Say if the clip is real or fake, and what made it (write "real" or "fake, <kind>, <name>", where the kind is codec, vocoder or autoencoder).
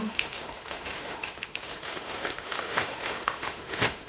fake, autoencoder, DAC-VAE